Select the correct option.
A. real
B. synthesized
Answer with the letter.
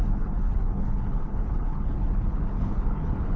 B